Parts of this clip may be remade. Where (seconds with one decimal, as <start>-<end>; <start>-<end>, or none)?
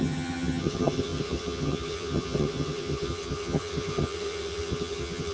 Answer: 0.0-5.3